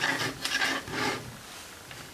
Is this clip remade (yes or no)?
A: no